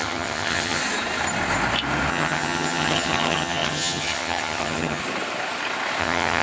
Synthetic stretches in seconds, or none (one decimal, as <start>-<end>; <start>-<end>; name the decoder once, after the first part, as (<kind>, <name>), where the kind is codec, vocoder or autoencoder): 0.0-0.8 (vocoder, HiFi-GAN); 2.1-5.0; 6.0-6.4

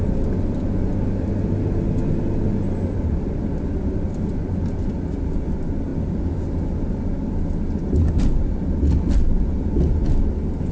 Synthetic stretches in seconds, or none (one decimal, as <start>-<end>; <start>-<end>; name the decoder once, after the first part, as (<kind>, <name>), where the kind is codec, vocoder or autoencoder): none